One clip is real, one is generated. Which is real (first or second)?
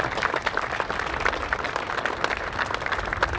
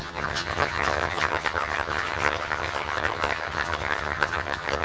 first